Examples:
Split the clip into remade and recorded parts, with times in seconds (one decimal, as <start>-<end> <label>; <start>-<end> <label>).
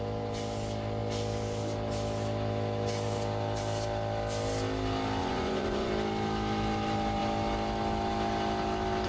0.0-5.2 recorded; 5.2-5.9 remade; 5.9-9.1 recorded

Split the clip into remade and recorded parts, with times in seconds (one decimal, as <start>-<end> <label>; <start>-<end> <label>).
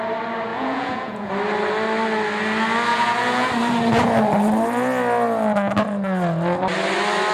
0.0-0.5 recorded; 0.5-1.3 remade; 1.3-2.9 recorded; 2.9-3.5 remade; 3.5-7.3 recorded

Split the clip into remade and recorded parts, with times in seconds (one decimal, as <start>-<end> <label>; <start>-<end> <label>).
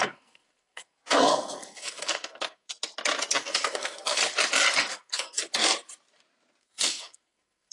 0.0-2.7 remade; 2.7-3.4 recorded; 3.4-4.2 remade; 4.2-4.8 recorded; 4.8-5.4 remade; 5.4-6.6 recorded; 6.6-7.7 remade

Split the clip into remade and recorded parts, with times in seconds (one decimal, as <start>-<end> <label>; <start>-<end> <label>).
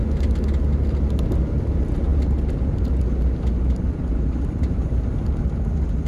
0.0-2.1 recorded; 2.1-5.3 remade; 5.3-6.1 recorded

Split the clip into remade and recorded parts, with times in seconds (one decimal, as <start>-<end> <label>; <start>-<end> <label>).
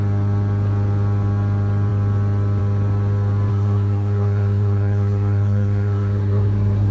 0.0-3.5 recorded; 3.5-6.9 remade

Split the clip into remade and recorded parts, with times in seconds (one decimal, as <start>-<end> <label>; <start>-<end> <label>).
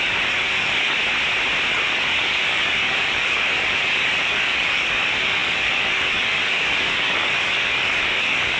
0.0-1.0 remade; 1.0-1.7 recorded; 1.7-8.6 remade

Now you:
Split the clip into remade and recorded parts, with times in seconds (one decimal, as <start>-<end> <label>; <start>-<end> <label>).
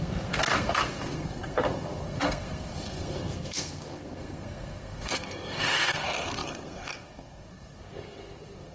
0.0-8.7 remade